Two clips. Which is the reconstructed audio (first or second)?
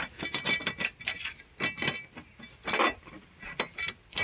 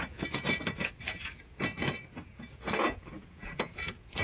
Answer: second